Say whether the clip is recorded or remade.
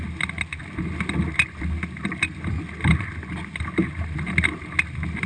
recorded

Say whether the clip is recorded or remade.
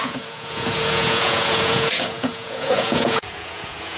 remade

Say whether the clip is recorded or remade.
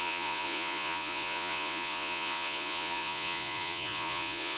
remade